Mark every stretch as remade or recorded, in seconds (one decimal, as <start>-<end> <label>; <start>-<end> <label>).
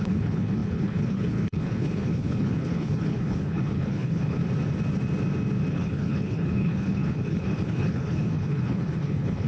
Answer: 0.0-4.4 remade; 4.4-5.7 recorded; 5.7-9.5 remade